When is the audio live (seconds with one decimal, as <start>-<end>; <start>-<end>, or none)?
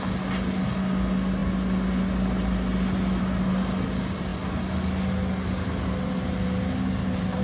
0.0-7.4